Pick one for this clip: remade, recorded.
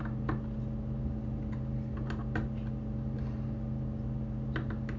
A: recorded